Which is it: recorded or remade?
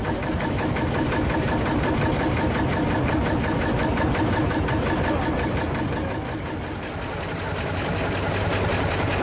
recorded